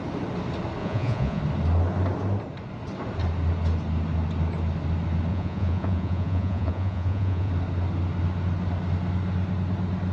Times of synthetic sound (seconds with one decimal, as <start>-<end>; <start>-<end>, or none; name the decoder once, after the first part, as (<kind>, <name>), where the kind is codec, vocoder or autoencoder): 0.8-1.4 (vocoder, Vocos); 5.3-7.5